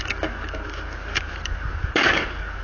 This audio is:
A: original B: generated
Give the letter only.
B